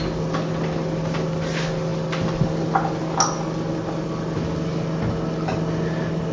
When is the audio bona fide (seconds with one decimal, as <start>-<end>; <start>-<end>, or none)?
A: 0.0-6.3